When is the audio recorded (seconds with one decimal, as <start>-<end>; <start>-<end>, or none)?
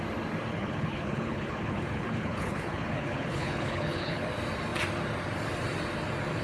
0.0-0.5; 4.3-6.4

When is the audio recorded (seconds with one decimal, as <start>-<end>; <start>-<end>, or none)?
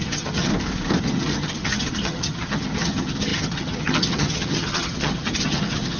0.5-1.0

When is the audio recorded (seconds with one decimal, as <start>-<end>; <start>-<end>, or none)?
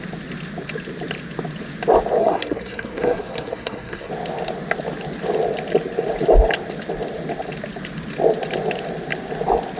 0.0-2.2; 4.1-9.8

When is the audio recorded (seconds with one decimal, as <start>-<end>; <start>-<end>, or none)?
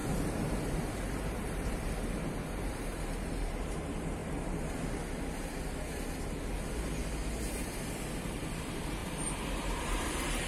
4.2-8.2; 9.0-9.8